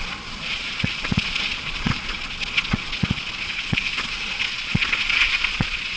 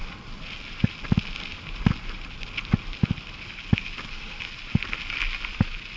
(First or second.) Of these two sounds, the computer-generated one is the first